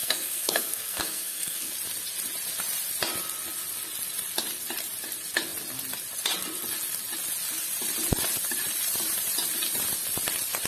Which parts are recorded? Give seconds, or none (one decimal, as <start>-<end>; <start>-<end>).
1.7-10.7